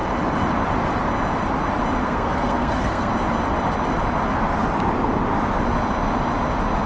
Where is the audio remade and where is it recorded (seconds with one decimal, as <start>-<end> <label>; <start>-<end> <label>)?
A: 0.0-2.0 recorded; 2.0-3.1 remade; 3.1-6.9 recorded